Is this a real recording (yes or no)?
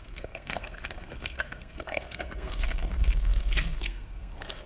no